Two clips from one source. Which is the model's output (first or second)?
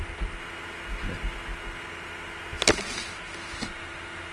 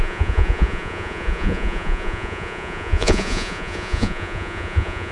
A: second